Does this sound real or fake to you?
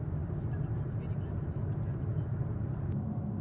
real